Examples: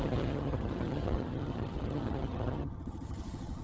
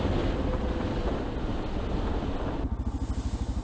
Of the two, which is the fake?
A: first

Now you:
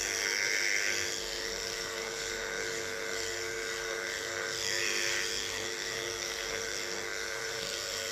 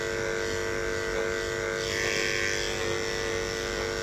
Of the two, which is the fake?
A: first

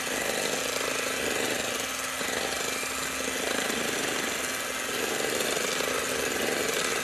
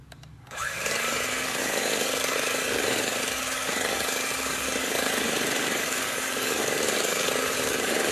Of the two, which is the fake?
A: second